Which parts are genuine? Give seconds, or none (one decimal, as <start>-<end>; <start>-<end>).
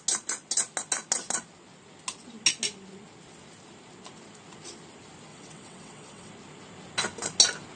0.0-5.3; 6.3-7.8